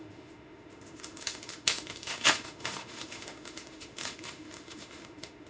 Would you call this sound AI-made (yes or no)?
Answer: yes